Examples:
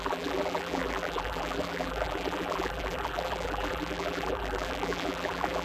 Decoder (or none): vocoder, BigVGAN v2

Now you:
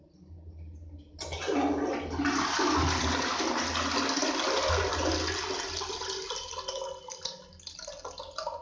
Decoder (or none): none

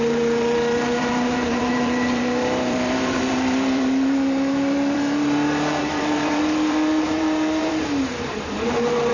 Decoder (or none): vocoder, BigVGAN v2